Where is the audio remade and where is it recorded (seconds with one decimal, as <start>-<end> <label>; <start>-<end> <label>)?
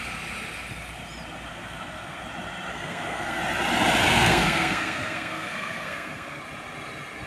0.0-1.5 recorded; 1.5-2.2 remade; 2.2-2.7 recorded; 2.7-3.4 remade; 3.4-4.1 recorded; 4.1-6.4 remade; 6.4-7.3 recorded